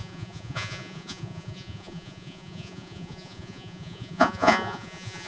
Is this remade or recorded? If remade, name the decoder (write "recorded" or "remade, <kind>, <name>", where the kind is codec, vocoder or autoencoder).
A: remade, vocoder, Vocos